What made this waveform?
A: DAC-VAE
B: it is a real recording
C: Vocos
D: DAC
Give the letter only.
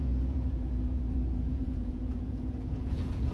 C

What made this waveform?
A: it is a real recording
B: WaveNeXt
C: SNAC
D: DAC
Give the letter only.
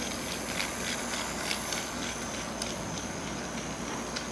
A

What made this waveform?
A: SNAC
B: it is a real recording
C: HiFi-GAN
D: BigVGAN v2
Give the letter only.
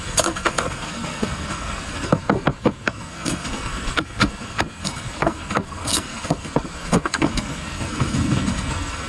A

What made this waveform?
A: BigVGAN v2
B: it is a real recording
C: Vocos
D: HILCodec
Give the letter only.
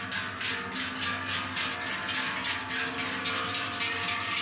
B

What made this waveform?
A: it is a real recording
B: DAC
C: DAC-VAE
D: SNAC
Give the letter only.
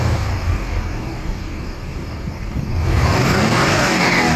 B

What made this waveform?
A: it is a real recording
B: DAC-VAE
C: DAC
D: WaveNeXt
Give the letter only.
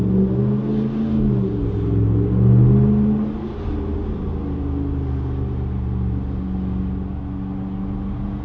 A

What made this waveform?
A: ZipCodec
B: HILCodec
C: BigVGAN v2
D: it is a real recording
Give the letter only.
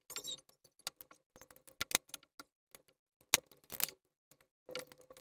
D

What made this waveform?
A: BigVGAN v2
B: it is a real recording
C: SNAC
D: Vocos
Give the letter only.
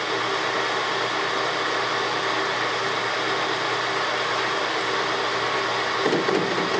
B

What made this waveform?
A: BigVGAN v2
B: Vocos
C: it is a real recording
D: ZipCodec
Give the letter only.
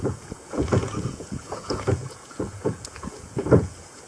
B